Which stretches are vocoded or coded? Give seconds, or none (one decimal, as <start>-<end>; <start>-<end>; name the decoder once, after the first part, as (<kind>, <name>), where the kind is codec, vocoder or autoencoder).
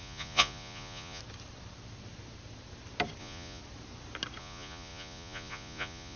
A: 0.0-1.2 (vocoder, Vocos); 3.2-3.6; 4.4-6.2